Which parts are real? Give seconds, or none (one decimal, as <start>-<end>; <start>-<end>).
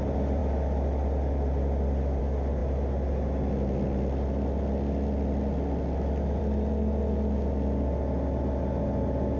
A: 0.0-9.4